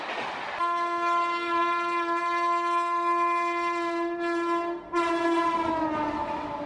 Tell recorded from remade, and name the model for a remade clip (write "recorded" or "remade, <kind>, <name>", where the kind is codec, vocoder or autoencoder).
recorded